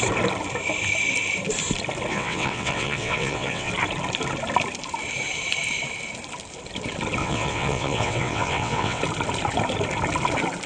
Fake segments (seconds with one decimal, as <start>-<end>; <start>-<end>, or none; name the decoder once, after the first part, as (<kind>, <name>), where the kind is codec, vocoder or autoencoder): 2.1-3.7 (vocoder, WaveNeXt); 7.2-9.0